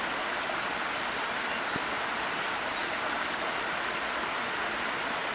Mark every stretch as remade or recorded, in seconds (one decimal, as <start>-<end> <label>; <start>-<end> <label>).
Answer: 0.0-5.3 recorded

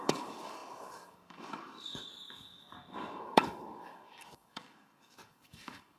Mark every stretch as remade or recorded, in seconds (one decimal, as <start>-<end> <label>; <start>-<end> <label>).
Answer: 0.0-6.0 remade